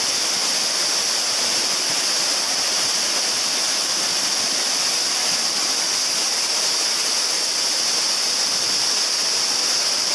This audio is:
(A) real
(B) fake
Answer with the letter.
A